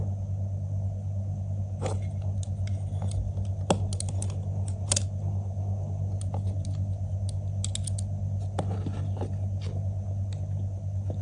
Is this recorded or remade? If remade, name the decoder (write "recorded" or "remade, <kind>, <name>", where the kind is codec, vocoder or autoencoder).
recorded